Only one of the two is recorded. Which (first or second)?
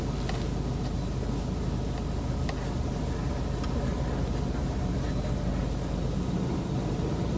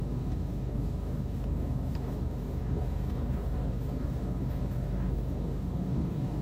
first